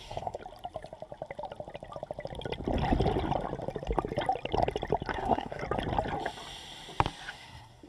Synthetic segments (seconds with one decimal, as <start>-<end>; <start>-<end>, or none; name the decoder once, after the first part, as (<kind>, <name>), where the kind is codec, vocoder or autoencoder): 0.0-0.4 (codec, SNAC); 5.1-5.6; 7.3-7.9